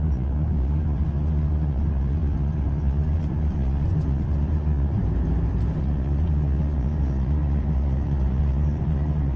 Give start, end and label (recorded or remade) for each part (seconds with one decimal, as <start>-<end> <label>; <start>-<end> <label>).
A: 0.0-5.0 remade; 5.0-5.8 recorded; 5.8-9.4 remade